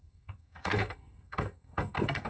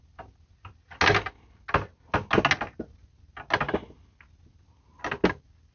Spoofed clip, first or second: first